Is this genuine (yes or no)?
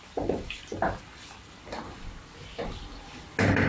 yes